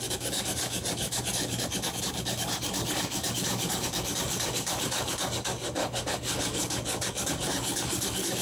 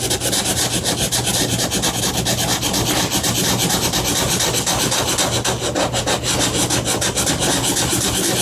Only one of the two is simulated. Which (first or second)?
first